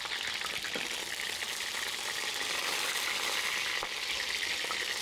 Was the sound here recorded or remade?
recorded